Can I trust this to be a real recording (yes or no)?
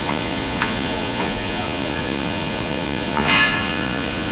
no